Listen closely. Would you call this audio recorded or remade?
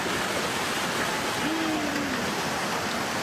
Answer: recorded